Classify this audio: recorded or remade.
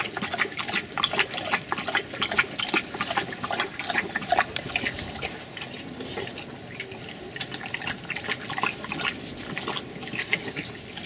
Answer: recorded